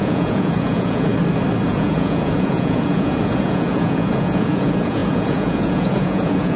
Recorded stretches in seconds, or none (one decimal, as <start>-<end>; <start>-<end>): 1.1-1.7